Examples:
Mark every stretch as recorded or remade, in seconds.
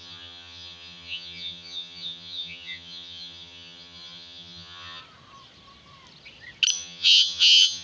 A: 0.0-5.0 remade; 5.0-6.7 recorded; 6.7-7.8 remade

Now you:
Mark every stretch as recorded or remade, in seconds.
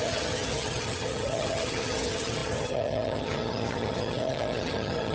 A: 0.0-5.1 remade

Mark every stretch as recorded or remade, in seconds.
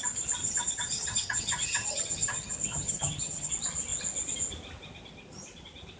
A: 0.0-0.4 recorded; 0.4-3.5 remade; 3.5-6.0 recorded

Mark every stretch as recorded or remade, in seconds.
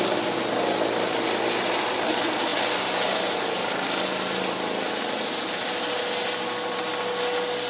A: 0.0-7.7 recorded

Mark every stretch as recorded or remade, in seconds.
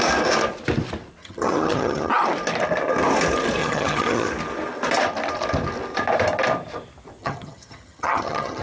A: 0.0-1.2 recorded; 1.2-2.1 remade; 2.1-3.6 recorded; 3.6-4.3 remade; 4.3-7.2 recorded; 7.2-8.6 remade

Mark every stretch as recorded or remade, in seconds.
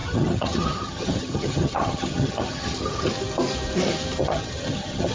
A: 0.0-3.1 remade; 3.1-4.2 recorded; 4.2-5.1 remade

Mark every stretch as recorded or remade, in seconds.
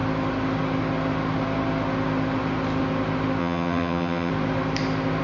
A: 0.0-3.4 recorded; 3.4-4.3 remade; 4.3-5.2 recorded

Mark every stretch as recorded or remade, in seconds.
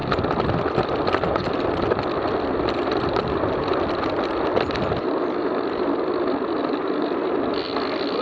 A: 0.0-8.2 recorded